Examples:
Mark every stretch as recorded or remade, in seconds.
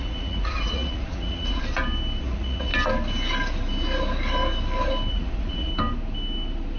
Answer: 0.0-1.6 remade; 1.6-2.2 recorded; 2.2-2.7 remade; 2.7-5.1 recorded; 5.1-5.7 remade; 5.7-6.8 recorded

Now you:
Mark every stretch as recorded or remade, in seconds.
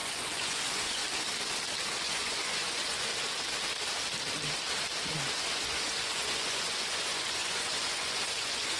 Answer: 0.0-1.0 remade; 1.0-2.0 recorded; 2.0-3.1 remade; 3.1-5.3 recorded; 5.3-8.8 remade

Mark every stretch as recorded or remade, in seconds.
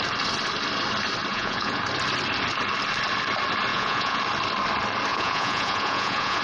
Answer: 0.0-1.3 recorded; 1.3-1.8 remade; 1.8-3.7 recorded; 3.7-4.2 remade; 4.2-5.1 recorded; 5.1-6.4 remade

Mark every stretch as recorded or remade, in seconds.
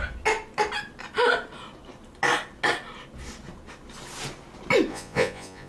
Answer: 0.0-4.9 recorded; 4.9-5.7 remade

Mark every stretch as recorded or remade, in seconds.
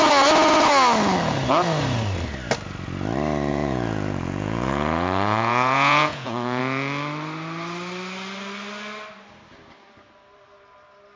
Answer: 0.0-3.5 recorded; 3.5-6.6 remade; 6.6-11.2 recorded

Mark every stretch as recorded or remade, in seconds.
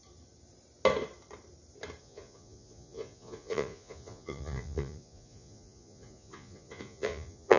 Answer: 0.0-2.0 recorded; 2.0-7.6 remade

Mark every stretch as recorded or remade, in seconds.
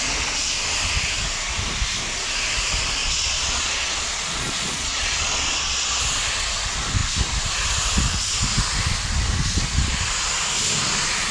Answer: 0.0-3.0 recorded; 3.0-6.0 remade; 6.0-11.3 recorded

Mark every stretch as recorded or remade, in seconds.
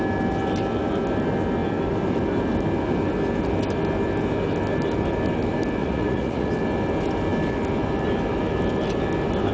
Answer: 0.0-5.8 recorded; 5.8-6.5 remade; 6.5-9.5 recorded